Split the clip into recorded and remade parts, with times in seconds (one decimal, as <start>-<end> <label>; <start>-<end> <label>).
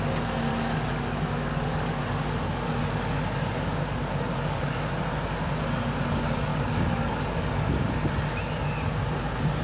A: 0.0-0.5 recorded; 0.5-5.0 remade; 5.0-6.5 recorded; 6.5-7.7 remade; 7.7-9.6 recorded